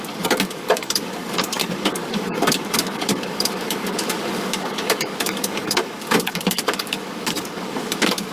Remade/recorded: remade